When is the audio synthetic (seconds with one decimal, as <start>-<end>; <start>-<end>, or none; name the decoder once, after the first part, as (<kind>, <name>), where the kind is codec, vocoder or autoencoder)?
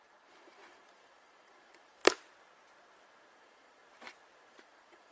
0.0-2.0 (vocoder, Vocos); 3.4-3.8; 4.5-5.1